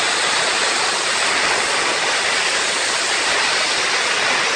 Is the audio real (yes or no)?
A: yes